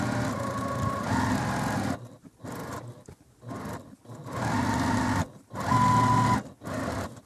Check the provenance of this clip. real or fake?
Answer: real